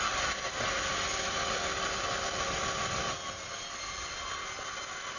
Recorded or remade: recorded